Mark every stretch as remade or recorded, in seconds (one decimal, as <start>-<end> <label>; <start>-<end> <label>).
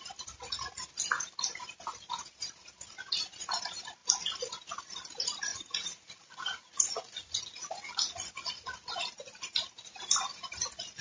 0.0-5.5 recorded; 5.5-8.3 remade; 8.3-11.0 recorded